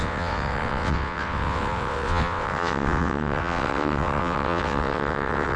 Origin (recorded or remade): remade